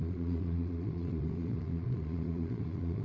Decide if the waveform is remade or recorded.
remade